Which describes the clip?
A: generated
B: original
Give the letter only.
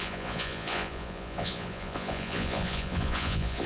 A